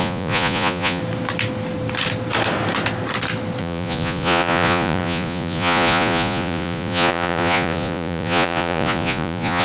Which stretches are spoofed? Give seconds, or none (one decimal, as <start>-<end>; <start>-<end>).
0.0-1.0; 3.6-9.6